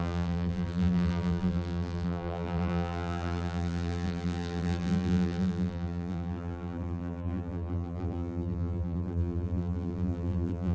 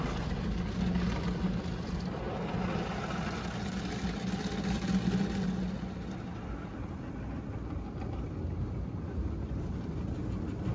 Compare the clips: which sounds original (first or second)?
second